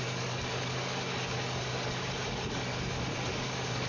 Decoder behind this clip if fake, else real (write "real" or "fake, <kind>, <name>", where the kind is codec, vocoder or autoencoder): fake, codec, DAC